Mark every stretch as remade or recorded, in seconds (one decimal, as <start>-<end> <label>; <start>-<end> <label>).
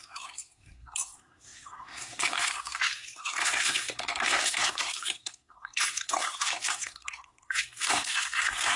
0.0-8.8 remade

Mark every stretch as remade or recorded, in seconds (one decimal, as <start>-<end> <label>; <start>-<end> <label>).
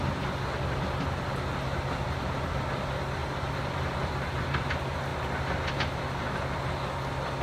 0.0-7.4 recorded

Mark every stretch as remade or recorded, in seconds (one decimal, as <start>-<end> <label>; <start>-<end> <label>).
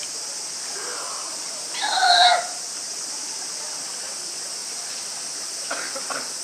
0.0-0.9 recorded; 0.9-1.6 remade; 1.6-4.6 recorded; 4.6-5.5 remade; 5.5-6.4 recorded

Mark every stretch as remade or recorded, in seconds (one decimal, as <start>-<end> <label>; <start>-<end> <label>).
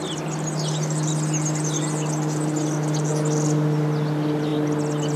0.0-5.2 recorded